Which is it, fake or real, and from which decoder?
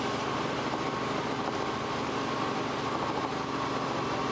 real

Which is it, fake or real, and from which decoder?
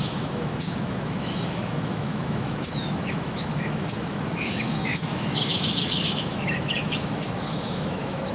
fake, autoencoder, DAC-VAE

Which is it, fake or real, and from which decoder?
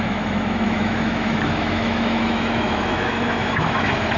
fake, autoencoder, DAC-VAE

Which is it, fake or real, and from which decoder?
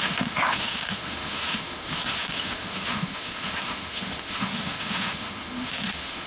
fake, autoencoder, DAC-VAE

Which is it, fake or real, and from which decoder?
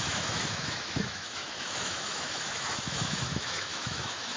fake, autoencoder, DAC-VAE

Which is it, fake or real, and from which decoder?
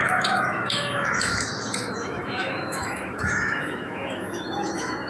fake, autoencoder, DAC-VAE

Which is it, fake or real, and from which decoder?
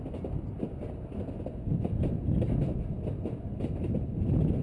real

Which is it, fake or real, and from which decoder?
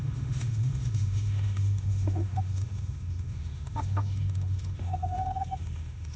fake, autoencoder, DAC-VAE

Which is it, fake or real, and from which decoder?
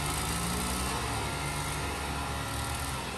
real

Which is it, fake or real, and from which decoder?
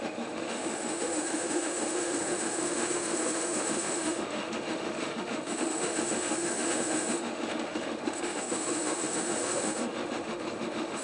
fake, autoencoder, DAC-VAE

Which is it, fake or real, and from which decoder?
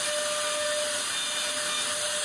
real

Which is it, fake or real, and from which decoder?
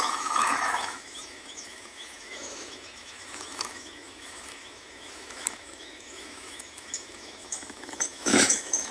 fake, autoencoder, DAC-VAE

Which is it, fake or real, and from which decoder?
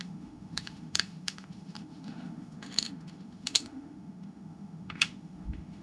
fake, autoencoder, DAC-VAE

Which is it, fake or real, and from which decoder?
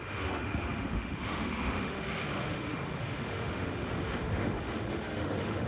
fake, autoencoder, DAC-VAE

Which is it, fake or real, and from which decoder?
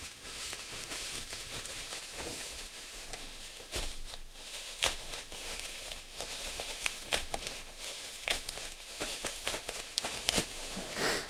fake, autoencoder, DAC-VAE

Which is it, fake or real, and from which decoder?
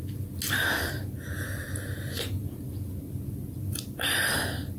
real